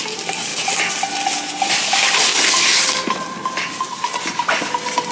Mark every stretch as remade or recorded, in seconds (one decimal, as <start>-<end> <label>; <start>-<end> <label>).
0.0-0.5 remade; 0.5-1.7 recorded; 1.7-2.3 remade; 2.3-2.9 recorded; 2.9-5.1 remade